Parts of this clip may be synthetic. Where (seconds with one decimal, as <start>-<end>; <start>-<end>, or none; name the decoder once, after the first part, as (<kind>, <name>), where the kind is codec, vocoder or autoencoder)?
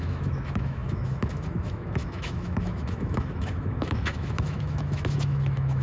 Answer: 0.0-5.8 (autoencoder, DAC-VAE)